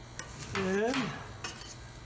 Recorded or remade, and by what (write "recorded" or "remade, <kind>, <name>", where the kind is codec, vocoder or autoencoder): recorded